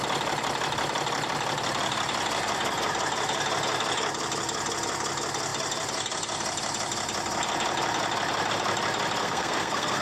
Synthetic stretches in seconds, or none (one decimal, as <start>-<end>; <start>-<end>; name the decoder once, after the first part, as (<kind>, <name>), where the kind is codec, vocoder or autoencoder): 9.2-10.0 (codec, SNAC)